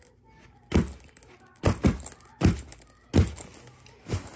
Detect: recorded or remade recorded